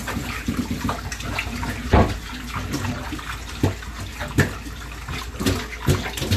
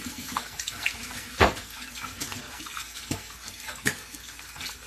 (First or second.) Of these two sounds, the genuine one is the first